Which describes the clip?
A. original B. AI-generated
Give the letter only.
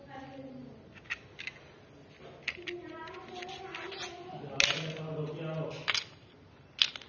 A